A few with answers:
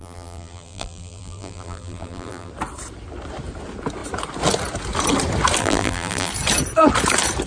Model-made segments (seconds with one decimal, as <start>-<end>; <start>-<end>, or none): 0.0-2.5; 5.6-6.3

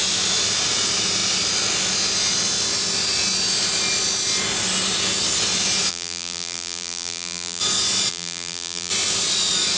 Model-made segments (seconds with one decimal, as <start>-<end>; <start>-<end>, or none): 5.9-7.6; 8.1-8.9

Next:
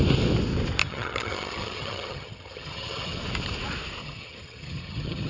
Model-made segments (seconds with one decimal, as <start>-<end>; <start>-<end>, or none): 0.8-3.2; 4.0-5.3

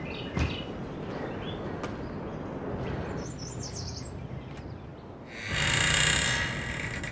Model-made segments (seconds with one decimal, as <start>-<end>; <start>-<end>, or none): none

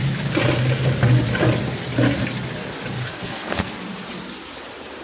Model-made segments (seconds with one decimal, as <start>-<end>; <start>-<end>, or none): 3.1-3.7

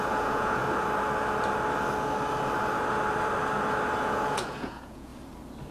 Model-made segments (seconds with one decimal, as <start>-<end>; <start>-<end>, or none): 0.0-0.6; 4.0-5.1

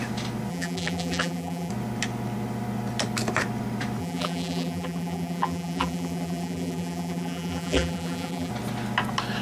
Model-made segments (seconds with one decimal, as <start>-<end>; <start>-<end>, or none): 0.5-1.7; 4.0-8.5

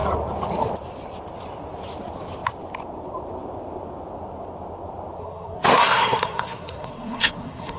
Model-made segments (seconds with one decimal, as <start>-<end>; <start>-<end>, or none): 5.2-7.8